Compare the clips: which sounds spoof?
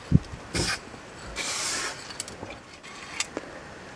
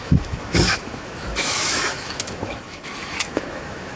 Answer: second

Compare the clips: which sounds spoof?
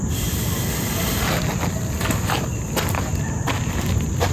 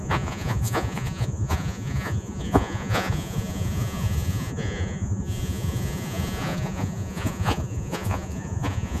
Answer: second